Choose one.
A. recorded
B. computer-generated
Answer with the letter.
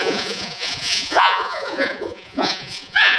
B